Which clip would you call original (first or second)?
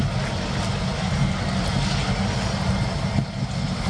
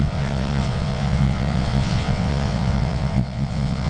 first